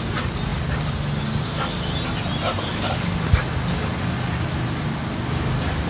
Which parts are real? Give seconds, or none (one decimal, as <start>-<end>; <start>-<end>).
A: 0.0-5.9